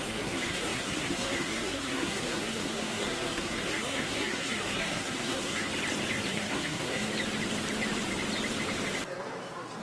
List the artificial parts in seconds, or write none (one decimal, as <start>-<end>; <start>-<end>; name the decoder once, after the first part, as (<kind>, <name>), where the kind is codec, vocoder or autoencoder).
0.0-5.7 (codec, SNAC); 6.3-7.1